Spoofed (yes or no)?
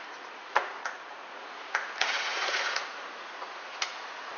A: yes